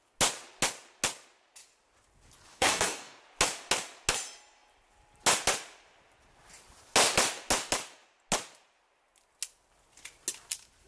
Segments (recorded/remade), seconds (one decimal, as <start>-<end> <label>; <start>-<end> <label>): 0.0-2.5 recorded; 2.5-3.2 remade; 3.2-10.9 recorded

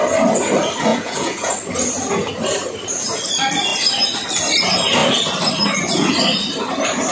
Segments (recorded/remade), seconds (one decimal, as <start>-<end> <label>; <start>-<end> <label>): 0.0-0.9 recorded; 0.9-1.5 remade; 1.5-7.1 recorded

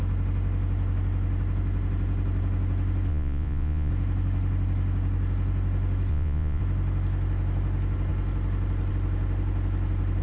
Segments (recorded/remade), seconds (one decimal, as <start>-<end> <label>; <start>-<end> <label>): 0.0-3.1 recorded; 3.1-3.9 remade; 3.9-6.1 recorded; 6.1-6.6 remade; 6.6-10.2 recorded

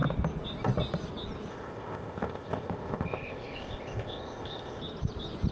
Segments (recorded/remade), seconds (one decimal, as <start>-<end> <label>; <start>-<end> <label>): 0.0-1.5 recorded; 1.5-4.8 remade; 4.8-5.5 recorded

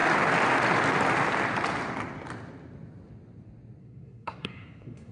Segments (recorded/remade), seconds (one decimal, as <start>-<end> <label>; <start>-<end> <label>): 0.0-3.8 recorded; 3.8-5.1 remade

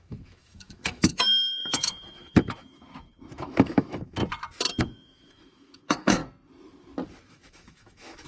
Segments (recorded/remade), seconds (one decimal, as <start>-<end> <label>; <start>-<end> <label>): 0.0-4.2 remade; 4.2-4.8 recorded; 4.8-6.2 remade; 6.2-7.3 recorded; 7.3-8.3 remade

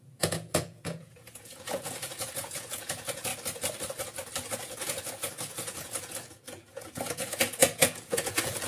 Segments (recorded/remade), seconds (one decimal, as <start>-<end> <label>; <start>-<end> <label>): 0.0-3.3 remade; 3.3-4.5 recorded; 4.5-8.7 remade